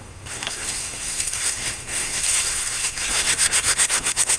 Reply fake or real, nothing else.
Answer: fake